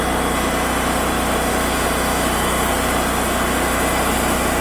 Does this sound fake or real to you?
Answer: real